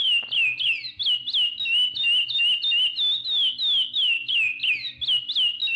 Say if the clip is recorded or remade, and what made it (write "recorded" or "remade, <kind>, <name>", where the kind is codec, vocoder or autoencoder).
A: recorded